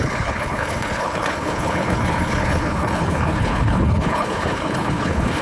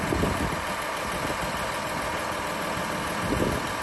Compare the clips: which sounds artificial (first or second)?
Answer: first